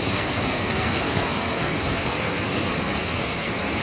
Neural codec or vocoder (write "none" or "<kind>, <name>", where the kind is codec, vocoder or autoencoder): codec, SNAC